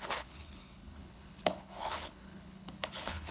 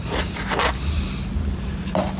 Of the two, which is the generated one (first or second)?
first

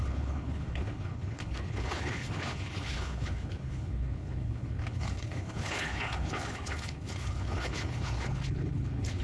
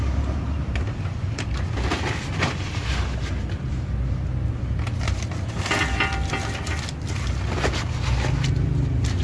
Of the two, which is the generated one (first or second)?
first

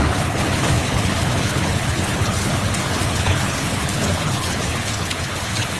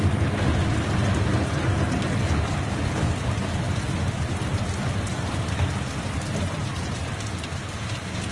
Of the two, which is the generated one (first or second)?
first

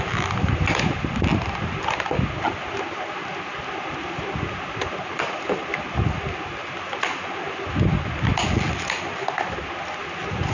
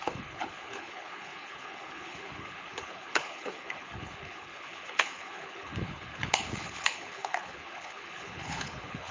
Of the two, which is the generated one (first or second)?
second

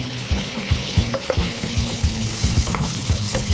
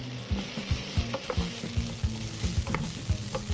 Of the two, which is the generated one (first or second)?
first